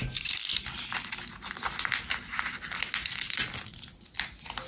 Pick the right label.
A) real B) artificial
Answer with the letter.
A